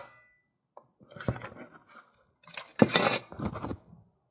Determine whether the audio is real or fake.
real